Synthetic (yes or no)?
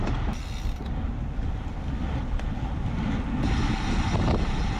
no